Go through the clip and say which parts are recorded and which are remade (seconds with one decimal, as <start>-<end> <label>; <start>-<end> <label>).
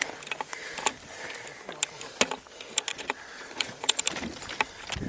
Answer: 0.0-2.9 recorded; 2.9-4.0 remade; 4.0-5.1 recorded